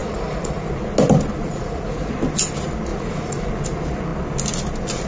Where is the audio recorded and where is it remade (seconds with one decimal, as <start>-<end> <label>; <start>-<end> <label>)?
0.0-0.7 remade; 0.7-1.4 recorded; 1.4-2.1 remade; 2.1-2.9 recorded; 2.9-3.5 remade; 3.5-5.1 recorded

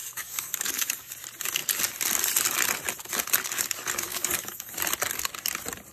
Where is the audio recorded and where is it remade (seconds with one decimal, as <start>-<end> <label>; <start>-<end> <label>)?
0.0-1.1 remade; 1.1-4.1 recorded; 4.1-4.7 remade; 4.7-5.9 recorded